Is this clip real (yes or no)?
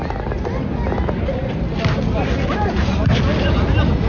yes